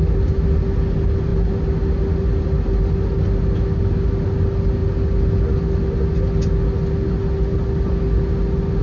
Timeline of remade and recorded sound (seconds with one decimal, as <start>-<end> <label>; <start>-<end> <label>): 0.0-8.8 recorded